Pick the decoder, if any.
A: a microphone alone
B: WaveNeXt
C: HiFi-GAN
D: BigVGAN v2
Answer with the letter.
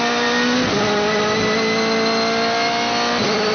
A